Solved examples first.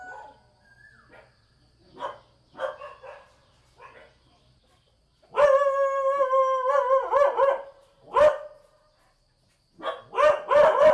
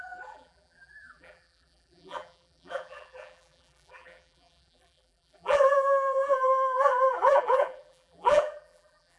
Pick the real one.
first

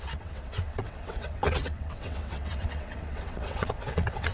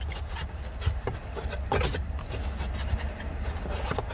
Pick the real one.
second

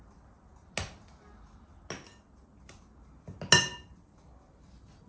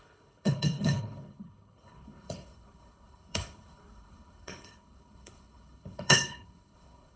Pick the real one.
first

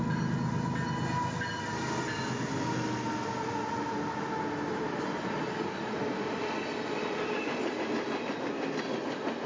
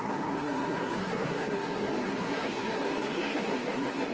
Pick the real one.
first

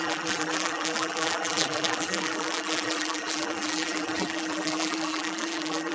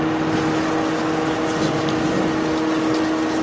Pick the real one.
second